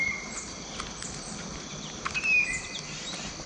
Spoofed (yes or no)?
no